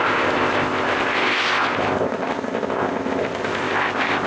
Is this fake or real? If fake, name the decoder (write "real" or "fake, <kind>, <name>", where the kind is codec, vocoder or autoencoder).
fake, codec, ZipCodec